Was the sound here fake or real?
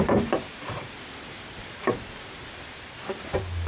fake